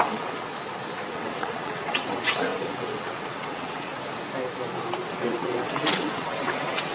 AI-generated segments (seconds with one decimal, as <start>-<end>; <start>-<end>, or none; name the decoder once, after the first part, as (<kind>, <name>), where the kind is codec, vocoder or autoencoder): 0.0-0.5 (vocoder, WaveNeXt); 1.1-3.9; 5.1-6.9